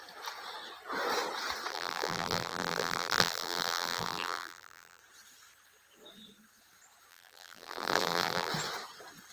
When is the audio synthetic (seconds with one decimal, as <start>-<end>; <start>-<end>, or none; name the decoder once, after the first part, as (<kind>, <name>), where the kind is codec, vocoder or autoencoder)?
1.7-5.0 (vocoder, BigVGAN v2); 7.1-8.5